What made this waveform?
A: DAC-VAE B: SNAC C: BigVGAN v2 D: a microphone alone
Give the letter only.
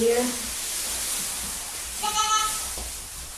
D